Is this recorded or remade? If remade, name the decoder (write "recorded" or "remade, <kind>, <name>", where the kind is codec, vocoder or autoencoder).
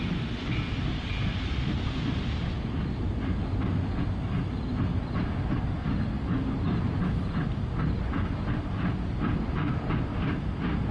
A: recorded